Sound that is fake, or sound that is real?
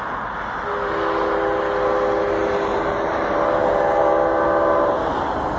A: real